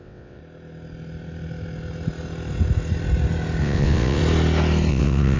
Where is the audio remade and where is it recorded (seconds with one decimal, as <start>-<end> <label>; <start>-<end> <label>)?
0.0-0.4 remade; 0.4-3.6 recorded; 3.6-4.2 remade; 4.2-4.9 recorded; 4.9-5.4 remade